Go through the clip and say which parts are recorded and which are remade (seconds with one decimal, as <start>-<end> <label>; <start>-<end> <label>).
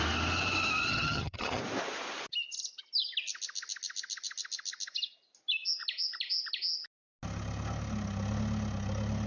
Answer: 0.0-0.9 recorded; 0.9-1.6 remade; 1.6-9.3 recorded